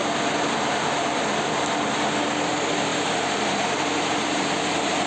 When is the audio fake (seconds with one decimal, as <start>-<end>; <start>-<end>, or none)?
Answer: 2.9-5.1